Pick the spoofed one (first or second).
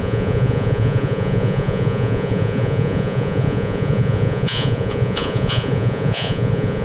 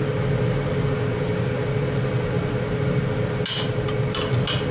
first